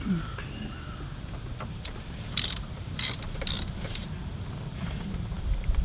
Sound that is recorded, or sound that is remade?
remade